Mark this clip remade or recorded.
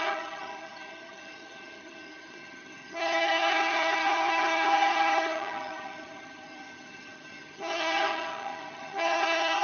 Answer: remade